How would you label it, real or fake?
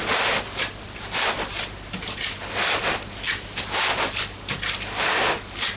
real